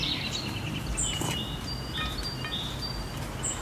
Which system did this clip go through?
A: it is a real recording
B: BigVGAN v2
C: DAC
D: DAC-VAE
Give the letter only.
A